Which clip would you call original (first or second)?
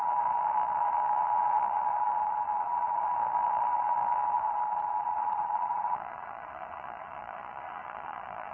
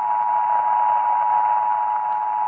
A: second